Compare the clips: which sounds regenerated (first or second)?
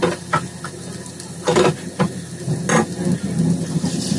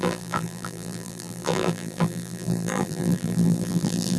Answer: second